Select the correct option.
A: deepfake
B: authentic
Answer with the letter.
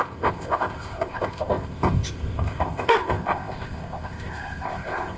A